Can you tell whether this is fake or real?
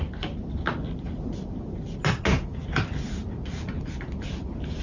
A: real